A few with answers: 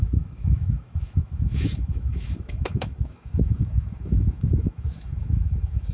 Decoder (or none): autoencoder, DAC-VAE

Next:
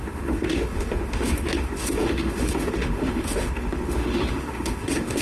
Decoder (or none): autoencoder, DAC-VAE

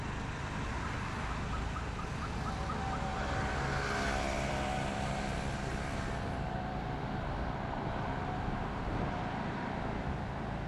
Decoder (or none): none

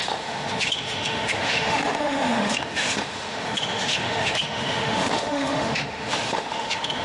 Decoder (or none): autoencoder, DAC-VAE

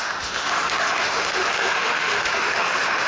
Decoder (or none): autoencoder, DAC-VAE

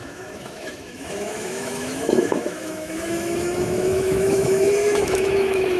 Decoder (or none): autoencoder, DAC-VAE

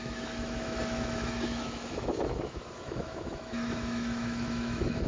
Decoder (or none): autoencoder, DAC-VAE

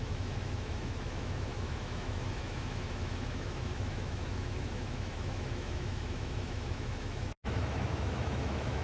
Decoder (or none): autoencoder, DAC-VAE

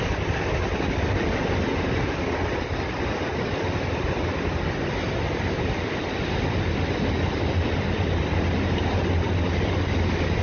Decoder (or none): none